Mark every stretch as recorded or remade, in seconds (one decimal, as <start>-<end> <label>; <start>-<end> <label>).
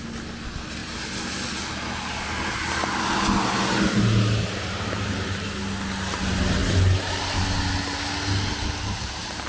0.0-9.5 recorded